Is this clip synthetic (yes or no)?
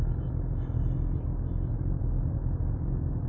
no